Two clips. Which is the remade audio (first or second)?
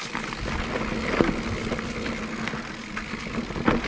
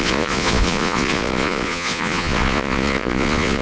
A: second